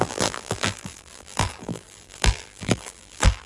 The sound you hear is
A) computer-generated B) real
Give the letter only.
A